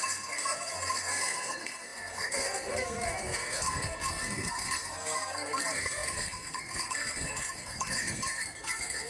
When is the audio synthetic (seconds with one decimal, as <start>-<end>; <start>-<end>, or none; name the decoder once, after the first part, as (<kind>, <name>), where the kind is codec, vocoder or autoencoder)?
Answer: 0.0-9.1 (codec, SNAC)